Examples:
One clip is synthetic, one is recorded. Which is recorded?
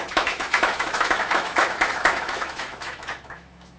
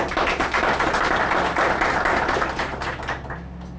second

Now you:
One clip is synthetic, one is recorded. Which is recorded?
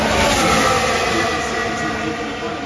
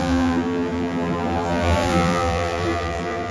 first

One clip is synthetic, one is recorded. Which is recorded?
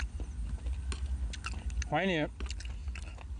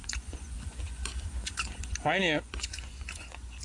first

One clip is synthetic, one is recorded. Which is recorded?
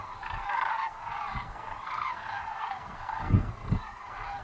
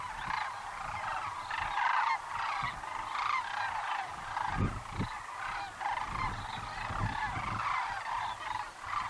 second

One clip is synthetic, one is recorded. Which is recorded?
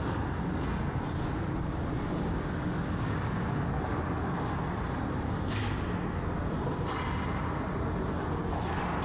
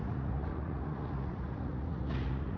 first